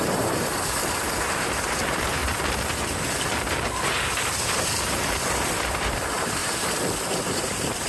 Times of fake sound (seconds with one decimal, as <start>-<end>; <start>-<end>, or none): 0.0-2.2; 5.2-7.9